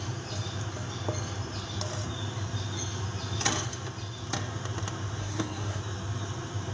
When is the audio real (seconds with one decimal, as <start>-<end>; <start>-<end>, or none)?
0.0-5.2; 5.8-6.7